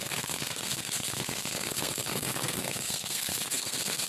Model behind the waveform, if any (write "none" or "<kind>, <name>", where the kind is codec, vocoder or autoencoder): codec, SNAC